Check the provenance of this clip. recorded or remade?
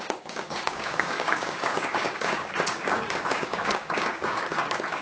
remade